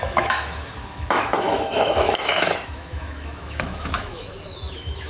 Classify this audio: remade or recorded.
remade